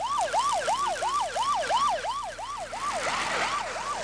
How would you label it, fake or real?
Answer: real